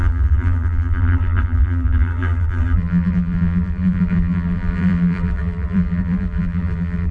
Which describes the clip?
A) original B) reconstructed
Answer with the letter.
B